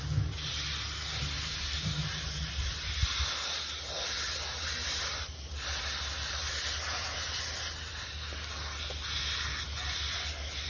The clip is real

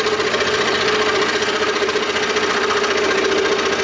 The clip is real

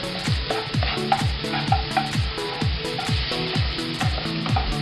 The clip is real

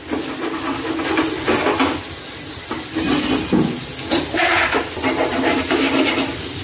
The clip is real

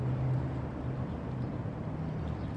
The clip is real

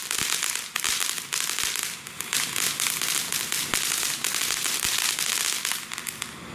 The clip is real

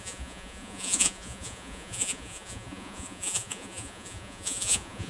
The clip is fake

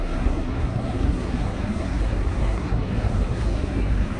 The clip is fake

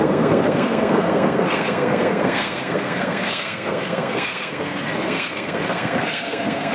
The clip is fake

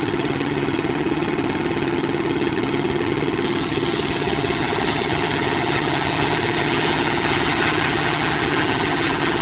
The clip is fake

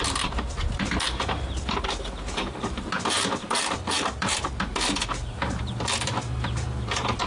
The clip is fake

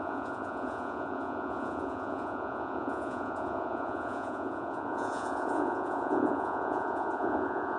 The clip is fake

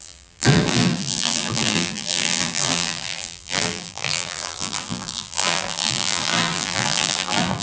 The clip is fake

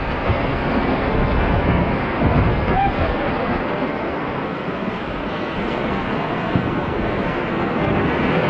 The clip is fake